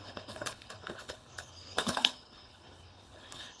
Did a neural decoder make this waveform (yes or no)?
yes